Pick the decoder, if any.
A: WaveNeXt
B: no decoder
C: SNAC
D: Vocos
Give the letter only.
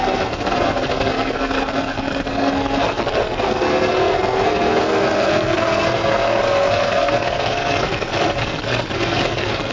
C